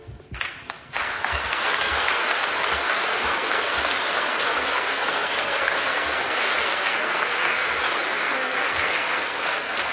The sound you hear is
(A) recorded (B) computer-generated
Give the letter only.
B